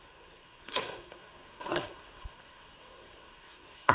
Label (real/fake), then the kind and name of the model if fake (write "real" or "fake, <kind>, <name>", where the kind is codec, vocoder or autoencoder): fake, codec, SNAC